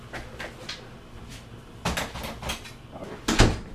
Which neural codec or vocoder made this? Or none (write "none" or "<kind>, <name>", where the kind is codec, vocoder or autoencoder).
none